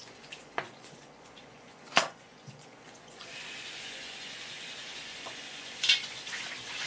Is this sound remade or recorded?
remade